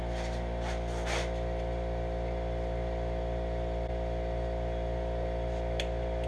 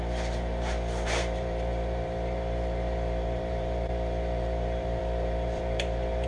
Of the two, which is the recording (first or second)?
first